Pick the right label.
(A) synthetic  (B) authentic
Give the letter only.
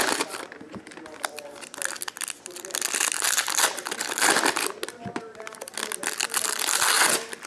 B